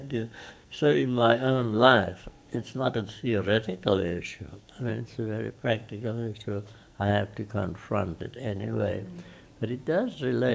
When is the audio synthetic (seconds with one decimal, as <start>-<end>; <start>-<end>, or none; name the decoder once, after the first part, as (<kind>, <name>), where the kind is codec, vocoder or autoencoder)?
0.0-4.9 (codec, SNAC); 5.5-7.1; 8.2-8.9

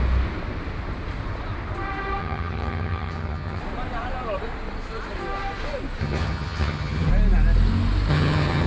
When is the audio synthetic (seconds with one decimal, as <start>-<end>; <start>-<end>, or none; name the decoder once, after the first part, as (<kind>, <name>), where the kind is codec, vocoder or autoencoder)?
2.2-3.6 (vocoder, HiFi-GAN); 6.0-7.1; 8.1-8.7

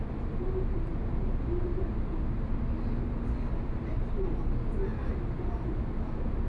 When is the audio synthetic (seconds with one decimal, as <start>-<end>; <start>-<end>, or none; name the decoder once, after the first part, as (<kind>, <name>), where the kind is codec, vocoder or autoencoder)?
none

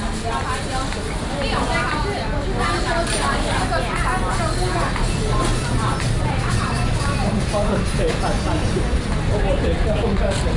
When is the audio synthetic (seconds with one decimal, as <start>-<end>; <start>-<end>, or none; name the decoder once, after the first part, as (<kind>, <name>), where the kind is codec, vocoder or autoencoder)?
5.5-8.1 (vocoder, BigVGAN v2)

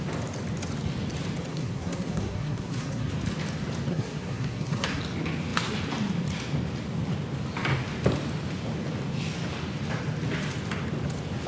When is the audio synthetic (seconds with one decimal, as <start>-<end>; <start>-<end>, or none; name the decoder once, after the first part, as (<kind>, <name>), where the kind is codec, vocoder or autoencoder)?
1.5-3.1 (codec, SNAC); 3.9-5.0

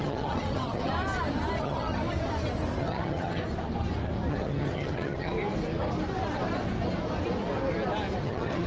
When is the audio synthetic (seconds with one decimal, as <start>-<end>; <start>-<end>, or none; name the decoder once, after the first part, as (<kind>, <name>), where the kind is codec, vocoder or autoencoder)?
0.0-0.9 (vocoder, HiFi-GAN); 1.6-2.0; 2.8-3.4; 4.3-5.3; 8.2-8.7

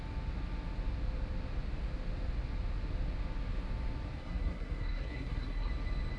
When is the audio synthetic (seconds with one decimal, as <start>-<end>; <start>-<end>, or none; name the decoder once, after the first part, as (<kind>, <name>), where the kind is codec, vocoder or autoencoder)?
4.2-5.7 (codec, SNAC)

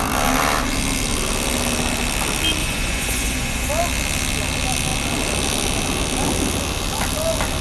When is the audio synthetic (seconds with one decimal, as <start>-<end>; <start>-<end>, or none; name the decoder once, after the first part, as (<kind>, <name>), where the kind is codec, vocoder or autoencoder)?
2.6-3.7 (vocoder, Vocos)